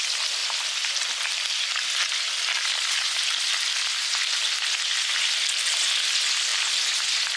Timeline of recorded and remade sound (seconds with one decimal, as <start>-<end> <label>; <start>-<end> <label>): 0.0-7.4 recorded